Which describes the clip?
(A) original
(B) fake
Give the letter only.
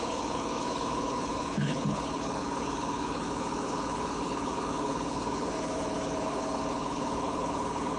B